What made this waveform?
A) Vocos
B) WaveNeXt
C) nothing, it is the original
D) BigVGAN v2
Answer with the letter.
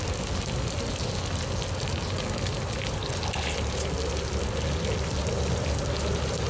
C